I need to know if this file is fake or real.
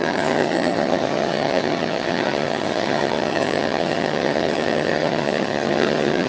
fake